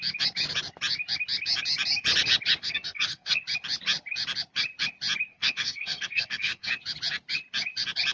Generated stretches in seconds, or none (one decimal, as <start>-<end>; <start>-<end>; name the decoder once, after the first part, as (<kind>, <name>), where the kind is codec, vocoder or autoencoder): 2.6-3.4 (codec, SNAC); 5.3-6.7